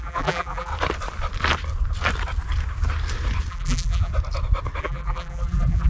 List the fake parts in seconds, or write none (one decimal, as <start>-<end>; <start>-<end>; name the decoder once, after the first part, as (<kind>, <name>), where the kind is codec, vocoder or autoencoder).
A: 0.0-0.7 (vocoder, BigVGAN v2); 3.5-4.1; 4.8-5.9